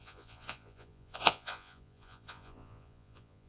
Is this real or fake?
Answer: fake